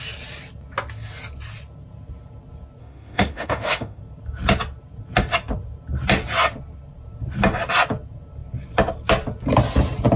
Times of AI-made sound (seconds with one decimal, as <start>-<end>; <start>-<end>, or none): 2.8-4.0